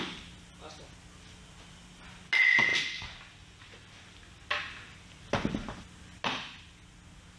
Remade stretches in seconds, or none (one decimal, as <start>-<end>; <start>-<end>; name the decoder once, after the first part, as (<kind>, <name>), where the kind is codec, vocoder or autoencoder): none